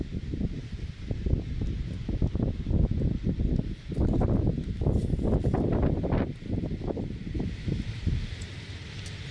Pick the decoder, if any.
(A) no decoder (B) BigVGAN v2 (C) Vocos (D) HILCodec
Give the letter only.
A